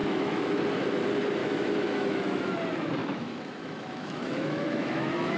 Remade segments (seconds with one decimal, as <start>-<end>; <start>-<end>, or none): 0.0-0.6; 1.4-2.5; 3.0-5.4